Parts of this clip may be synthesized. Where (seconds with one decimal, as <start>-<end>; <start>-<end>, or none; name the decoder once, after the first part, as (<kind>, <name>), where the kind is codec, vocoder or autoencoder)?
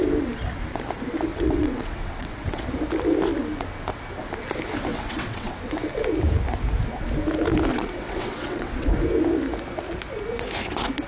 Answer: 1.3-2.6 (vocoder, WaveNeXt); 4.9-5.5; 7.7-8.9